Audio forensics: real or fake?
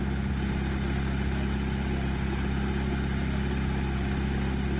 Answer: real